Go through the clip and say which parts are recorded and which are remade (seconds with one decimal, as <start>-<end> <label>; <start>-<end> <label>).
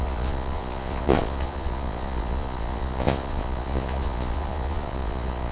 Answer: 0.0-5.5 remade